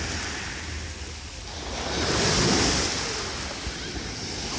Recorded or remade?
recorded